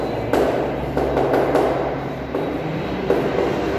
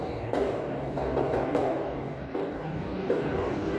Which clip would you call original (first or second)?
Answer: first